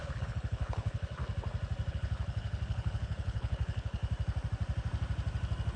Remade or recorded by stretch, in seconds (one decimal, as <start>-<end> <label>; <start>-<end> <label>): 0.0-1.2 remade; 1.2-1.9 recorded; 1.9-4.0 remade; 4.0-5.8 recorded